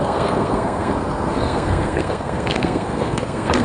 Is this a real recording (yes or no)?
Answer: no